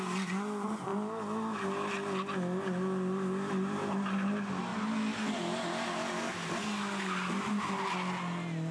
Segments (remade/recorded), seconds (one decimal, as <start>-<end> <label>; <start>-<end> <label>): 0.0-3.8 recorded; 3.8-4.3 remade; 4.3-8.7 recorded